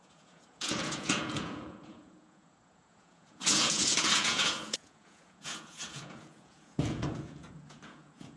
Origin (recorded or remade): remade